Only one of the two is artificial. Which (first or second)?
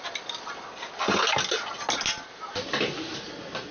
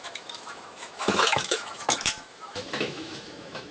second